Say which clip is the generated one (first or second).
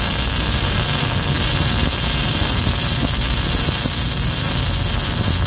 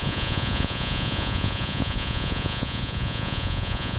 second